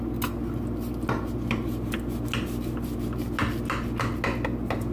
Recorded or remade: recorded